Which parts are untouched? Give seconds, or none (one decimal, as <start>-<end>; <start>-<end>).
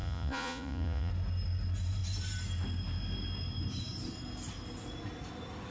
1.1-5.7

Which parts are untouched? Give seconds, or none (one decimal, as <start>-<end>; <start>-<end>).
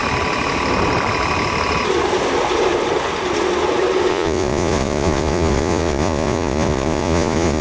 0.0-4.1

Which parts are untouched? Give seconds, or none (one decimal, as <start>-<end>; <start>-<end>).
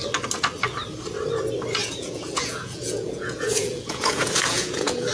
0.0-1.8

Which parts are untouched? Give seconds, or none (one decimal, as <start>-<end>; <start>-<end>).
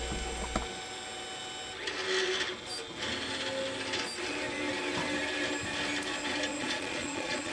0.0-6.5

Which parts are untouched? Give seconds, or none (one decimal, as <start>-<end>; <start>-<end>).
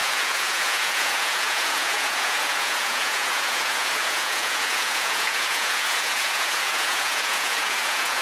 none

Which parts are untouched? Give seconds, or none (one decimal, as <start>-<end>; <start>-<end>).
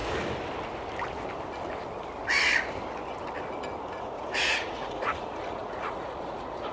0.0-4.0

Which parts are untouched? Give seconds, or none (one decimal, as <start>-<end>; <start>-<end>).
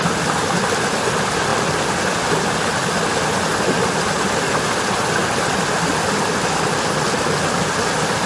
0.0-8.3